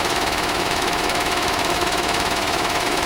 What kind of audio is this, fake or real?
fake